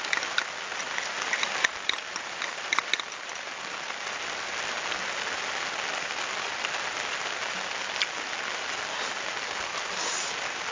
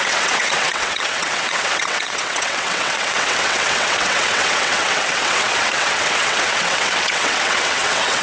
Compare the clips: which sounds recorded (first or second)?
first